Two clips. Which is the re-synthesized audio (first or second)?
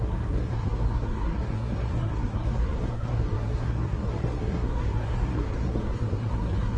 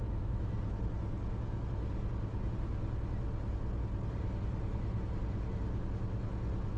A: first